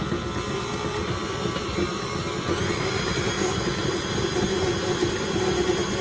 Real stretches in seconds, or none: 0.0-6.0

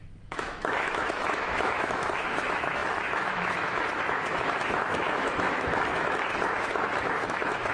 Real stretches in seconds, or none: none

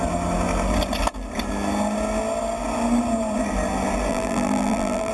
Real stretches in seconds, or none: 0.0-4.1

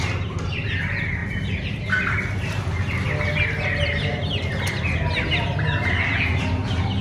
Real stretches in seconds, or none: 0.0-1.2; 1.9-7.0

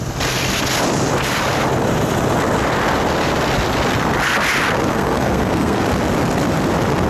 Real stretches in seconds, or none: 0.0-4.9; 5.8-7.1

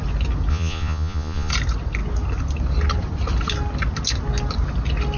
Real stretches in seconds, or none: 0.0-0.5; 1.5-5.2

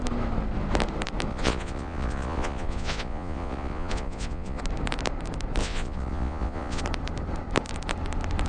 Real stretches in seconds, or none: 0.0-1.3; 4.6-5.6; 6.8-8.5